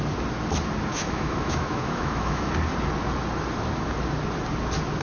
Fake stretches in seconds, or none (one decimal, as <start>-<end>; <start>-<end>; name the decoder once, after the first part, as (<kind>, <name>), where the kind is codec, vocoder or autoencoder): 0.9-2.5 (autoencoder, DAC-VAE)